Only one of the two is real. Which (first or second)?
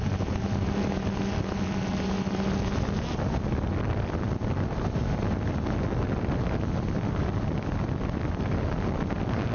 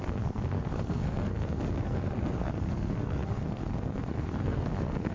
first